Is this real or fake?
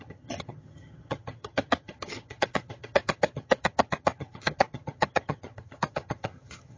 fake